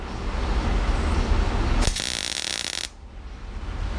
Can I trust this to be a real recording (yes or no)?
yes